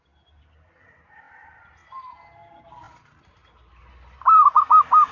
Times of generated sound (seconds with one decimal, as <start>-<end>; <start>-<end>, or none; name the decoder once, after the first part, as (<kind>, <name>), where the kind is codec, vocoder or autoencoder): none